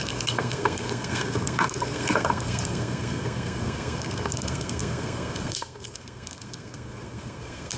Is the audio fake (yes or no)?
yes